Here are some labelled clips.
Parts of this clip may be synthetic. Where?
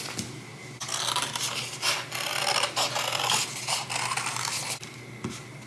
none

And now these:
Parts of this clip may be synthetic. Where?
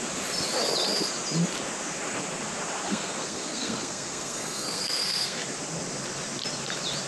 2.9-5.4 (codec, SNAC)